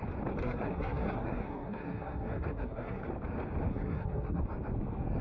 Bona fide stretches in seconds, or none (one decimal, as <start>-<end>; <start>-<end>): 0.0-0.4; 3.0-3.7; 4.4-5.2